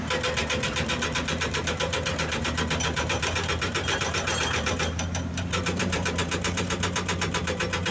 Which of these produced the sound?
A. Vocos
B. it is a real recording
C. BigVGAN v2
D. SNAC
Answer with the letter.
C